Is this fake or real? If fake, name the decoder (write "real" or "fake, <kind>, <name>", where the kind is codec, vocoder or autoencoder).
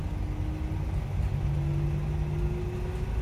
real